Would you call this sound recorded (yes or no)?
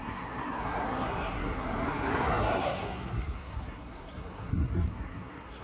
no